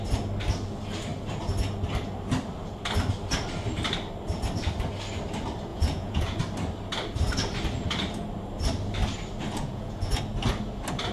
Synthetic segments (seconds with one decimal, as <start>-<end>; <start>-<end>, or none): 5.7-6.4; 9.5-10.2